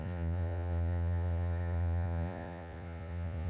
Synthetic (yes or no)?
yes